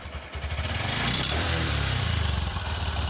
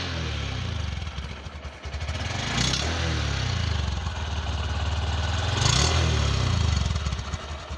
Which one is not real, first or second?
first